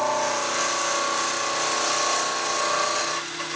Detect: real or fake real